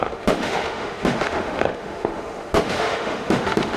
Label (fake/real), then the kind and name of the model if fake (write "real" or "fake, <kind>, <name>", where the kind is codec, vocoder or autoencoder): fake, autoencoder, DAC-VAE